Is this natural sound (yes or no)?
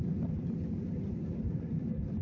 yes